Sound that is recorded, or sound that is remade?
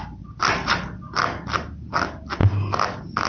recorded